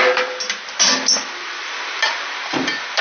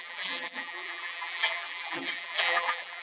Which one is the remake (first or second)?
second